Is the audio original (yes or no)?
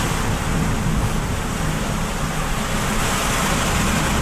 yes